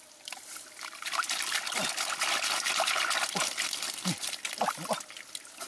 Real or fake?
real